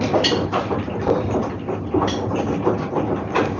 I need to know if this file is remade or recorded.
recorded